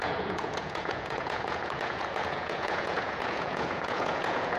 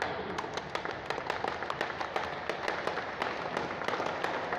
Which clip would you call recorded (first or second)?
second